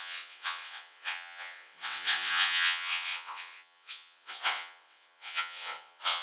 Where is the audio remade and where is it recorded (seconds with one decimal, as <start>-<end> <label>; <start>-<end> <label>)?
0.0-6.2 remade